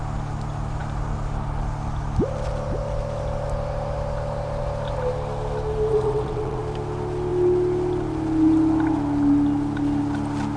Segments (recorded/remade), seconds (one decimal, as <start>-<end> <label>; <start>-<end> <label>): 0.0-5.9 recorded; 5.9-6.6 remade; 6.6-10.6 recorded